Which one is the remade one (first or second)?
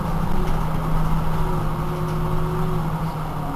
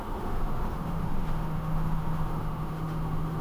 second